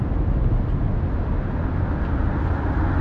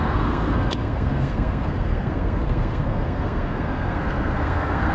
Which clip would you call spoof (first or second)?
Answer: second